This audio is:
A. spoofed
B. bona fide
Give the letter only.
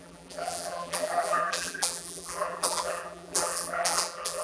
A